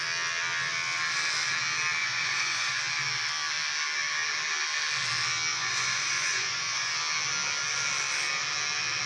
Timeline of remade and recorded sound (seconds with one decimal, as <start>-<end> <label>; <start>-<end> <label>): 0.0-2.0 recorded; 2.0-2.8 remade; 2.8-5.5 recorded; 5.5-6.9 remade; 6.9-9.1 recorded